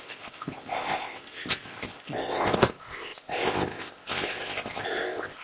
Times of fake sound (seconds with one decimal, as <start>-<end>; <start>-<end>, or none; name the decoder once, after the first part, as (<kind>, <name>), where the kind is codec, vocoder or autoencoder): 0.0-5.4 (codec, ZipCodec)